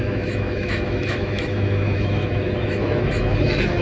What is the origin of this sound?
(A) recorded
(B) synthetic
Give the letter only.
B